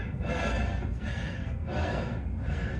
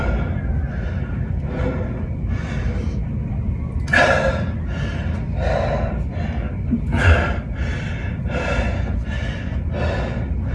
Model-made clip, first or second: first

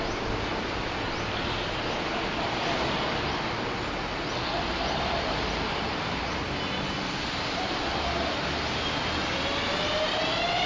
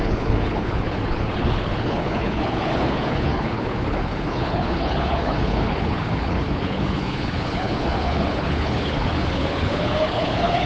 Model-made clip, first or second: second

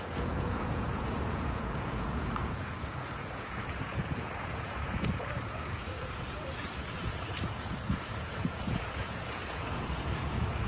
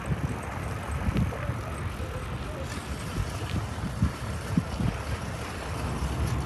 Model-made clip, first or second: first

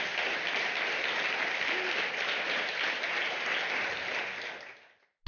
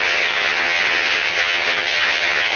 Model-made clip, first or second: second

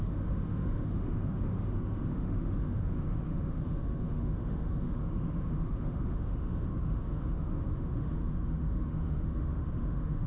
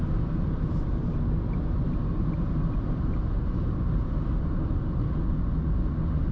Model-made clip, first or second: first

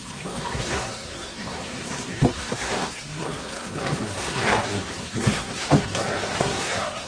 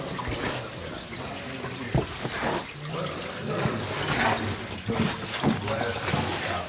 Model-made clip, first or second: first